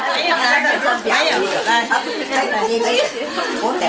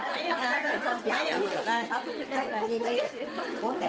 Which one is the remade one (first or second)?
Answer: second